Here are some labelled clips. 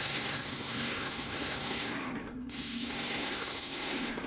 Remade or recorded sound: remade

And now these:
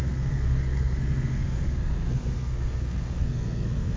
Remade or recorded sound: remade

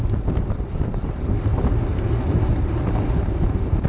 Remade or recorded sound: recorded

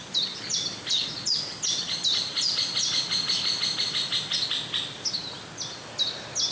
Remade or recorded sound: recorded